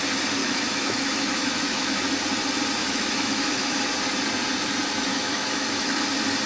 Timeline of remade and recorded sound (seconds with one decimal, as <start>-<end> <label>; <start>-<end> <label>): 0.0-0.4 recorded; 0.4-2.0 remade; 2.0-2.8 recorded; 2.8-3.9 remade; 3.9-5.1 recorded; 5.1-6.0 remade; 6.0-6.5 recorded